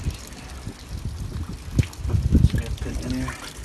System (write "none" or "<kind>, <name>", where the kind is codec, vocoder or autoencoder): none